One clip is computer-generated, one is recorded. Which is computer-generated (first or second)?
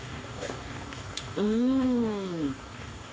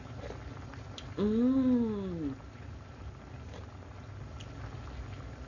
first